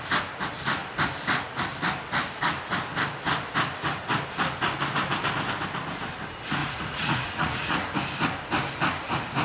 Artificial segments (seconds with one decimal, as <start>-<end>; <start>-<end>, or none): 6.6-7.9